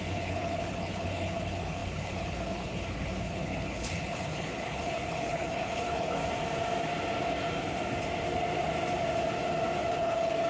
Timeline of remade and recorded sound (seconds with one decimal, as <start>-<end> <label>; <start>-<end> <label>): 0.0-6.2 remade; 6.2-9.9 recorded; 9.9-10.5 remade